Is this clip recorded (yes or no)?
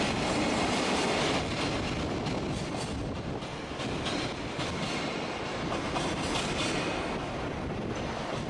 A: yes